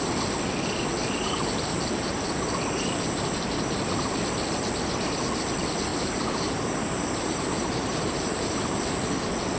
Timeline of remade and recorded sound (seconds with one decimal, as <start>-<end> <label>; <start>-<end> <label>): 0.0-1.0 recorded; 1.0-4.2 remade; 4.2-5.9 recorded; 5.9-8.8 remade; 8.8-9.6 recorded